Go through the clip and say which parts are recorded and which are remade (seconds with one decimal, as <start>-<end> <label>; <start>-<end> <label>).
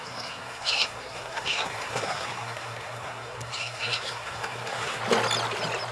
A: 0.0-5.0 remade; 5.0-5.9 recorded